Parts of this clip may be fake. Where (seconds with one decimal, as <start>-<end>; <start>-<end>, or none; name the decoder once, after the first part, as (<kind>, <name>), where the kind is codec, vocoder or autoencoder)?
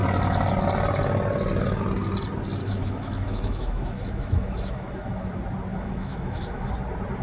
2.6-5.3 (autoencoder, DAC-VAE); 5.7-6.7